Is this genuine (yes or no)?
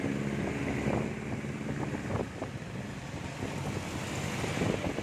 yes